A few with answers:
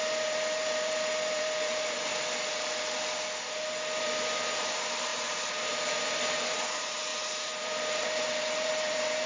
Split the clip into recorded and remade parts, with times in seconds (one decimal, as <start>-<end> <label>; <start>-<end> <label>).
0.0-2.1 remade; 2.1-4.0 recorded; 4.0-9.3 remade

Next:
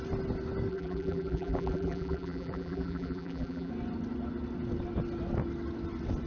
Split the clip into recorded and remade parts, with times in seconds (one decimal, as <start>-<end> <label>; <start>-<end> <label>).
0.0-0.7 recorded; 0.7-3.7 remade; 3.7-6.3 recorded

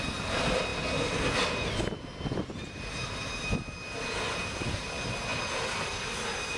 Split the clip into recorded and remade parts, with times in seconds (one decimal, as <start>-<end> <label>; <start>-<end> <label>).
0.0-6.6 recorded